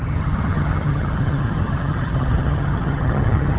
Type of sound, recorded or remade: remade